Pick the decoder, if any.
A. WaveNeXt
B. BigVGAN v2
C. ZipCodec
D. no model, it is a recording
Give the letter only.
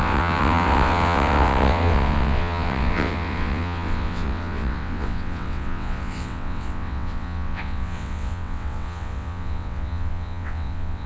A